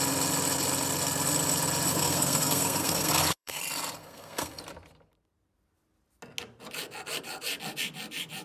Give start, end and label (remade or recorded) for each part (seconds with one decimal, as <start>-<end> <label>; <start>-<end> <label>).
0.0-1.9 recorded; 1.9-3.6 remade; 3.6-4.0 recorded; 4.0-4.6 remade; 4.6-8.4 recorded